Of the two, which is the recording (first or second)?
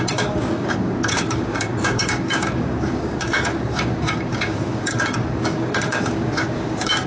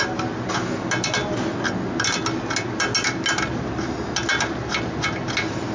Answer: second